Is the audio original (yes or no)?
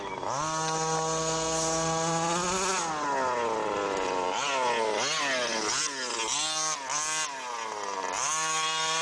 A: yes